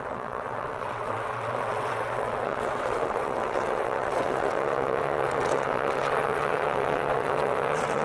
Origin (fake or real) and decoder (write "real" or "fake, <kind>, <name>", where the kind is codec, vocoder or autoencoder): fake, vocoder, WaveNeXt